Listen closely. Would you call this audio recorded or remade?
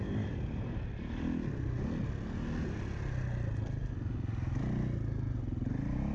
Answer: recorded